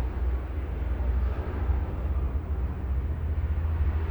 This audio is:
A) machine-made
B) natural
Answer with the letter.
B